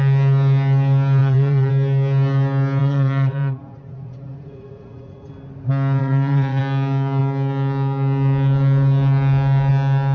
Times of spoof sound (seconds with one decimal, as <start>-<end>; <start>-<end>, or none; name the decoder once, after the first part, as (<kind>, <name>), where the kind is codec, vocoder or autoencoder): 1.2-1.7 (vocoder, Vocos); 2.8-5.3; 6.0-6.6

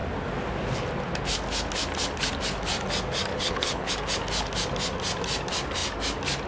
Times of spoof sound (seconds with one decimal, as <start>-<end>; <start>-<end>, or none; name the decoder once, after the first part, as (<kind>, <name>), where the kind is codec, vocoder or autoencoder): 3.3-3.9 (codec, HILCodec)

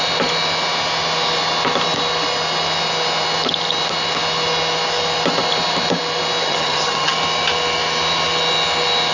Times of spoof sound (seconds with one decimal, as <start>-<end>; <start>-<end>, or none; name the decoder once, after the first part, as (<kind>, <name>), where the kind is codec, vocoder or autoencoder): 6.4-7.2 (vocoder, HiFi-GAN)

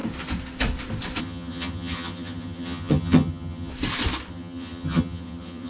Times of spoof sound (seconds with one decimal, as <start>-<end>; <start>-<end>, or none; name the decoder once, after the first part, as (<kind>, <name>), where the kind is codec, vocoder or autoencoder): 1.2-3.7 (vocoder, HiFi-GAN); 4.3-5.7

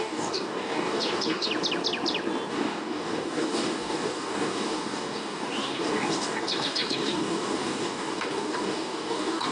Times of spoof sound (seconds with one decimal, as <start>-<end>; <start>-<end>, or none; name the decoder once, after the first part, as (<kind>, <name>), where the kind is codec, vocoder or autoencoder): 0.0-1.5 (codec, DAC); 2.5-9.5

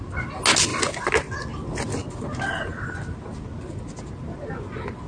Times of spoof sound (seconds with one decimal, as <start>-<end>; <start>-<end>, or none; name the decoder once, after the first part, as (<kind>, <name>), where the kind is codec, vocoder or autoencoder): none